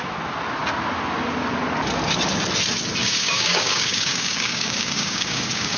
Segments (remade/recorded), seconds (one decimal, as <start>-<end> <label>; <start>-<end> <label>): 0.0-3.0 recorded; 3.0-5.8 remade